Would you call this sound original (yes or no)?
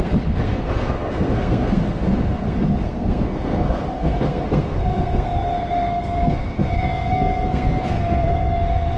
no